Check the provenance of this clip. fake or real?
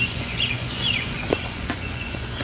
fake